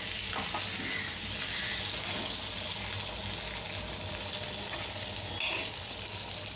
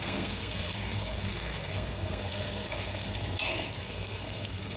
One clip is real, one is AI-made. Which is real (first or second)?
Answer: first